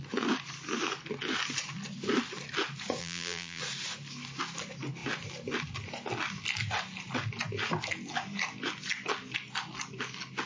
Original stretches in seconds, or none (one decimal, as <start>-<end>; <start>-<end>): 0.0-3.0; 3.6-10.5

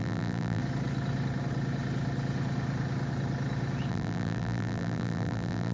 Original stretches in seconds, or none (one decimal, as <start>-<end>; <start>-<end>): 0.6-3.9